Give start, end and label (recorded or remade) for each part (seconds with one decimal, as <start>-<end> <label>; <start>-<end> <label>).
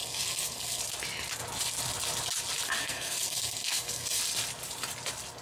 0.0-0.8 remade; 0.8-2.8 recorded; 2.8-4.2 remade; 4.2-5.4 recorded